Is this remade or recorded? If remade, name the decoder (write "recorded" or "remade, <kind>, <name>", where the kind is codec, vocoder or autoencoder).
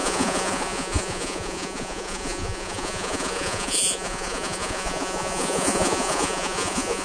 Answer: remade, vocoder, Vocos